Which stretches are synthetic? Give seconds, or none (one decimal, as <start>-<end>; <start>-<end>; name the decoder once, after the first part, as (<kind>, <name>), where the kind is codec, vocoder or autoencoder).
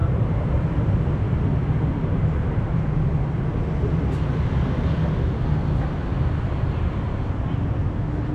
0.0-0.6 (vocoder, BigVGAN v2); 6.1-6.6